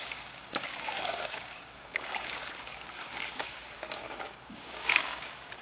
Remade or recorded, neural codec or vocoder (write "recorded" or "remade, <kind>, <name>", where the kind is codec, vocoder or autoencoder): remade, codec, DAC